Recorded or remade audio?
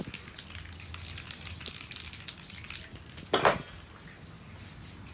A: recorded